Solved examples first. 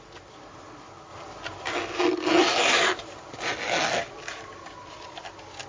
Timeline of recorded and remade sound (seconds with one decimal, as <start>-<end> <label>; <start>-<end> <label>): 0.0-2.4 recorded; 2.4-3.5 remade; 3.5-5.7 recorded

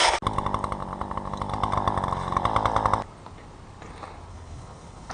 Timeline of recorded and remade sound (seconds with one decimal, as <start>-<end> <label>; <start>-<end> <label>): 0.0-4.3 recorded; 4.3-5.1 remade

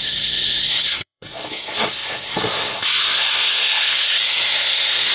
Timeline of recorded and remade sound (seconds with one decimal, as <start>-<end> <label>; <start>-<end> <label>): 0.0-5.1 remade

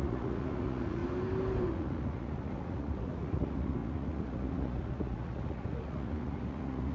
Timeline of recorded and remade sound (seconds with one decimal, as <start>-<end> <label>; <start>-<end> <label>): 0.0-1.0 remade; 1.0-1.7 recorded; 1.7-6.9 remade

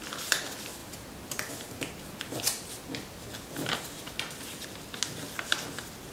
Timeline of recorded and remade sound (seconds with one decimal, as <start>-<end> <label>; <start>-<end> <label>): 0.0-6.1 recorded